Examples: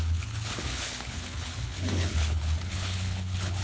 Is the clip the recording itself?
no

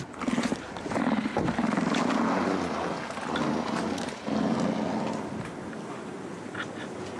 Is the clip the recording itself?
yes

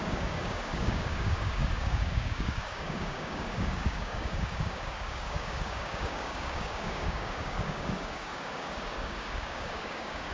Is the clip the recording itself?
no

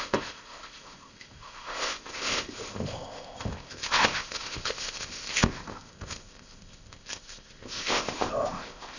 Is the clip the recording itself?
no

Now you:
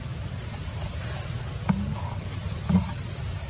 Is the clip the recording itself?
yes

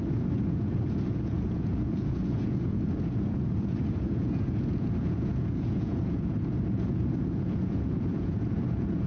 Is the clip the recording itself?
no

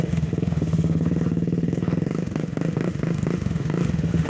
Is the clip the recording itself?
no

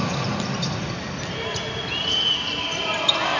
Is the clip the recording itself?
yes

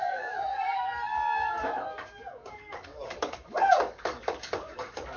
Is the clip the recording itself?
no